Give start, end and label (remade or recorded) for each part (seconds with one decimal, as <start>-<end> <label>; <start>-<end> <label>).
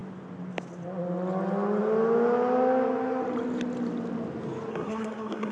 0.0-4.7 recorded; 4.7-5.5 remade